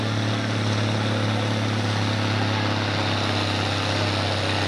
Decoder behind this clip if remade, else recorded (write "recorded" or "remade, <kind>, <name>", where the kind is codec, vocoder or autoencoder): recorded